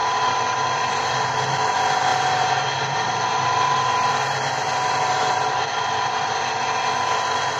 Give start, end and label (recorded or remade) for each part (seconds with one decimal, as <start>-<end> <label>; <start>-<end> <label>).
0.0-1.3 remade; 1.3-2.1 recorded; 2.1-6.7 remade; 6.7-7.6 recorded